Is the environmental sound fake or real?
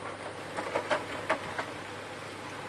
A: real